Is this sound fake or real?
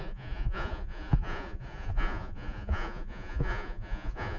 fake